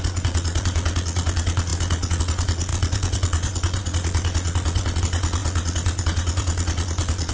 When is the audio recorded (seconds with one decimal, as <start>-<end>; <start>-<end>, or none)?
none

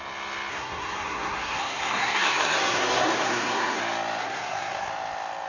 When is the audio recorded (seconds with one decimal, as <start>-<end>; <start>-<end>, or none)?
0.0-0.5; 3.8-4.2; 4.9-5.5

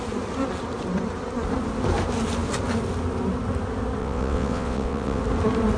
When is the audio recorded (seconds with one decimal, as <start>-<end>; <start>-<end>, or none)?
0.0-4.0; 5.2-5.8

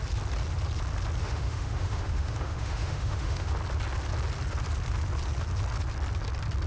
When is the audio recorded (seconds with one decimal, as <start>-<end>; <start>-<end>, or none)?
0.0-1.2; 3.5-6.7

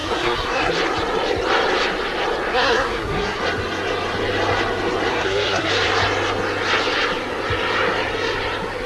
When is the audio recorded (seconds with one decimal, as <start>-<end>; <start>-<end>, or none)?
0.7-2.5; 3.4-5.1; 5.7-8.9

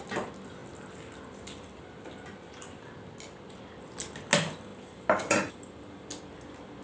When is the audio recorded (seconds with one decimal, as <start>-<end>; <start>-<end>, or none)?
0.0-6.8

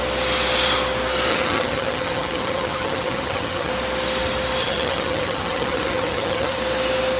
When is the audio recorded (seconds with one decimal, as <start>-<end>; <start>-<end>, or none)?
0.0-1.3; 3.7-4.6; 6.6-7.2

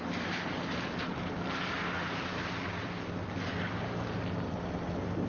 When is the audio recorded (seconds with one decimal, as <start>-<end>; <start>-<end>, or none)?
0.0-1.1; 3.0-5.3